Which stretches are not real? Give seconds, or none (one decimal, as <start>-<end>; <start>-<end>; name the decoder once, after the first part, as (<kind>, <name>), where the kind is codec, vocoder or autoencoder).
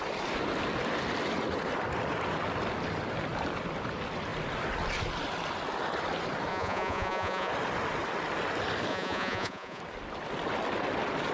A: 6.5-7.5 (vocoder, Vocos); 8.9-9.8